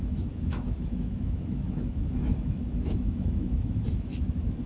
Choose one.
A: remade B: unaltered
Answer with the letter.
A